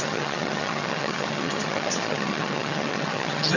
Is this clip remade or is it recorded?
remade